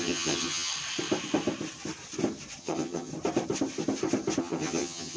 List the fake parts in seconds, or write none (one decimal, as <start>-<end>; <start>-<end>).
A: 0.0-0.7; 2.6-3.1; 4.4-5.2